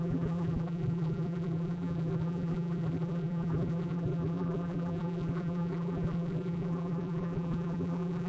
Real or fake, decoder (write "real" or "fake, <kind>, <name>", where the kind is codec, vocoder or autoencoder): fake, vocoder, BigVGAN v2